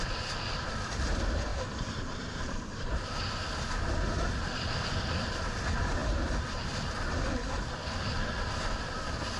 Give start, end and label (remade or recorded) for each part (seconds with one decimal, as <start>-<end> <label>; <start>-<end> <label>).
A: 0.0-1.5 recorded; 1.5-4.8 remade; 4.8-9.4 recorded